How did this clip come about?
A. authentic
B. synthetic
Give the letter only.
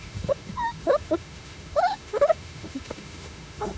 B